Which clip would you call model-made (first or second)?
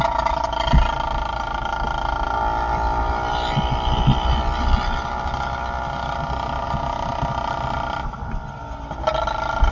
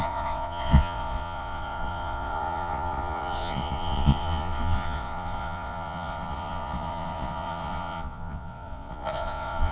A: second